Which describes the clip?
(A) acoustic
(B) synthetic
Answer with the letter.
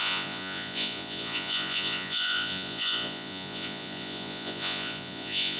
B